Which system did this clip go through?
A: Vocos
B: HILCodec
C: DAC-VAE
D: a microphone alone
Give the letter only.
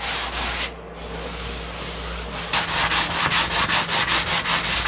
D